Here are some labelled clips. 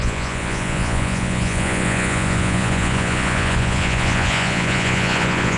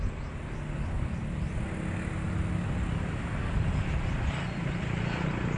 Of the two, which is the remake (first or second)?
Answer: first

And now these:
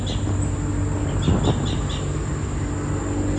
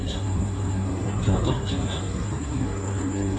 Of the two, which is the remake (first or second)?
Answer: second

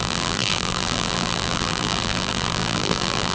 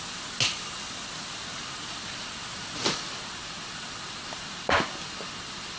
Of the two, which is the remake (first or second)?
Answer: first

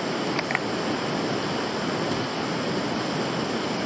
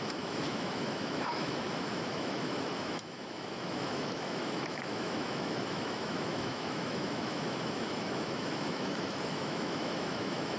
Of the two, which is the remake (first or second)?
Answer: second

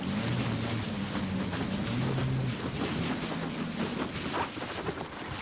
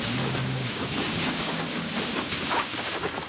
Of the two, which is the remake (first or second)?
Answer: second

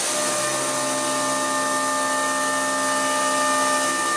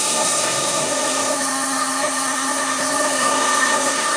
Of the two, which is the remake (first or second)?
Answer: second